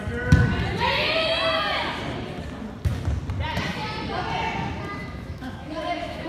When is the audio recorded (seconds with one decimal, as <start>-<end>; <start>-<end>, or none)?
0.0-5.0